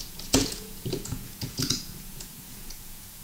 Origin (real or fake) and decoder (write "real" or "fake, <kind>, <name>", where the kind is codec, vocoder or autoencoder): fake, vocoder, Vocos